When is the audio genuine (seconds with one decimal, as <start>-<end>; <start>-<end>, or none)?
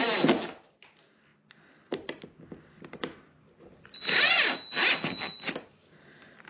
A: 0.0-6.5